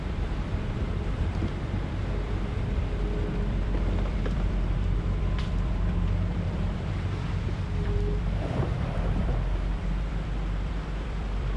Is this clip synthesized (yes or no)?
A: yes